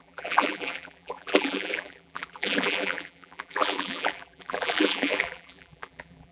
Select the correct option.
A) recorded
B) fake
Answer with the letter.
B